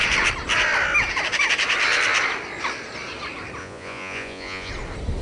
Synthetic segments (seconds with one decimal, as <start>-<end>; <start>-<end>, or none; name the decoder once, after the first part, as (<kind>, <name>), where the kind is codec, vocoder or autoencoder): 3.6-4.7 (vocoder, Vocos)

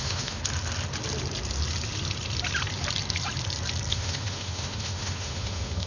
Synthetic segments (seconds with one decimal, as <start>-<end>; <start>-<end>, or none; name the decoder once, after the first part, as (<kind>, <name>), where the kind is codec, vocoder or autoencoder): 0.0-0.4 (autoencoder, DAC-VAE); 3.9-5.9